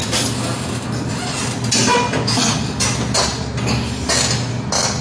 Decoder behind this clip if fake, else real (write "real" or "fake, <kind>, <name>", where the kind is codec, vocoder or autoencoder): real